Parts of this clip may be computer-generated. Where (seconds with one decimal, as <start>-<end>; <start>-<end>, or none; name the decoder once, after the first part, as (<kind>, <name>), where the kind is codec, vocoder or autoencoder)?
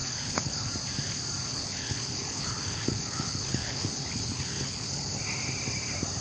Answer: 0.0-0.7 (codec, HILCodec); 1.5-5.2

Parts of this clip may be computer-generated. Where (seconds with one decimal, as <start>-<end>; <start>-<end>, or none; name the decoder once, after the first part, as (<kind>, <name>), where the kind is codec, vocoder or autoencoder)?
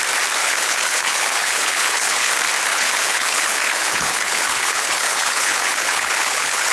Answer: 0.4-2.3 (codec, HILCodec); 2.7-6.7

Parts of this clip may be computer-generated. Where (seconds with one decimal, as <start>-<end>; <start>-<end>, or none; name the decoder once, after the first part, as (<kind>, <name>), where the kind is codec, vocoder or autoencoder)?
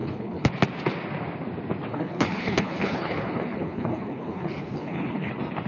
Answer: 0.0-0.5 (codec, HILCodec); 1.9-5.3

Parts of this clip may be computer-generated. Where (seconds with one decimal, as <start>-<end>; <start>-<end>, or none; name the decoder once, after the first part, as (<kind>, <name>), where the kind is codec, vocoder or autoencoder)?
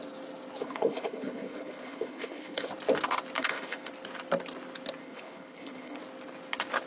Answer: 0.6-2.7 (codec, HILCodec); 3.4-3.9; 5.0-6.0